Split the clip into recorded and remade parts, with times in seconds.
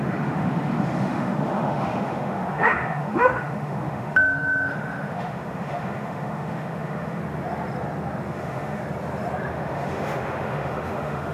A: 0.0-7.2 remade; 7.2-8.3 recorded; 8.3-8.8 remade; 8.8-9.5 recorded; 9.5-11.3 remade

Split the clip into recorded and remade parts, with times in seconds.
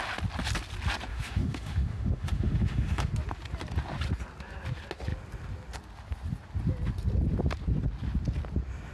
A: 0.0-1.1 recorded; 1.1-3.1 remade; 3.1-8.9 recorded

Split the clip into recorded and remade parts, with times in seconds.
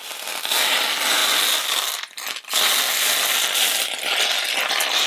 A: 0.0-5.1 recorded